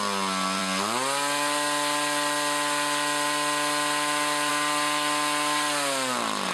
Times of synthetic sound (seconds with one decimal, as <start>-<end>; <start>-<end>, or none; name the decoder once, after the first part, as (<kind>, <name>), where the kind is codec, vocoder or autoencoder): none